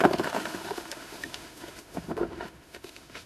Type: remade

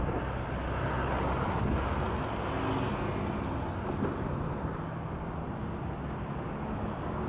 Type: recorded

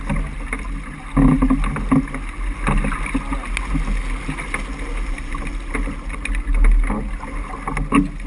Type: recorded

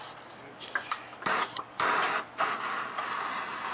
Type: recorded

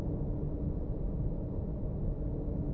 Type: recorded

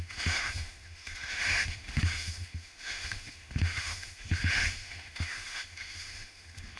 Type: remade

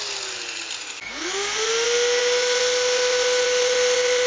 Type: recorded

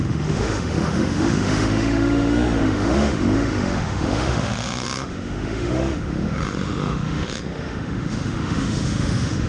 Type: remade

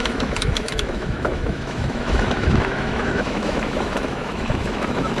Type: remade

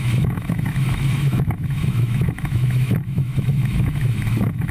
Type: remade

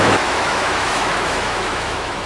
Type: remade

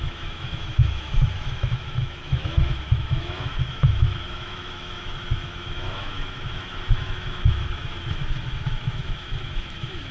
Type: remade